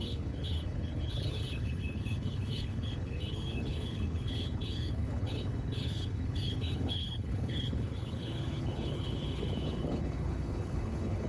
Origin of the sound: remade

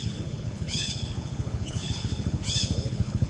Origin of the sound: remade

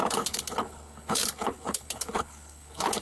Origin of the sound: remade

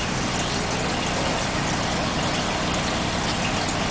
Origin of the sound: recorded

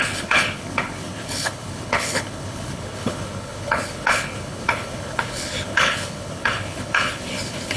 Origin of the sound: remade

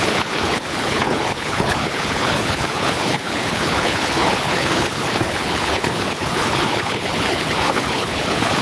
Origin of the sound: remade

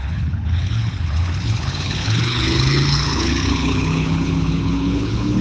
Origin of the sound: remade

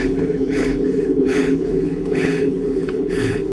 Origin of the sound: remade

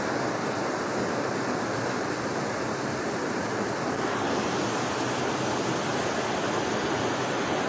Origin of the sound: recorded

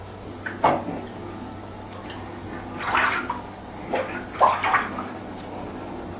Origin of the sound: recorded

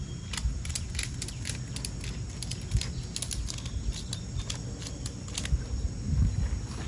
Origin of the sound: recorded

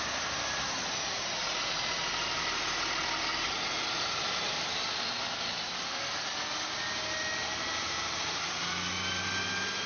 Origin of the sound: recorded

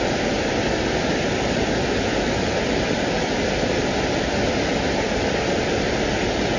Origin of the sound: recorded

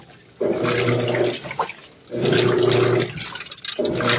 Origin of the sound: recorded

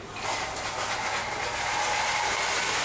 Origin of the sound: recorded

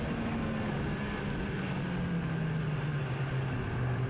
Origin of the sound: recorded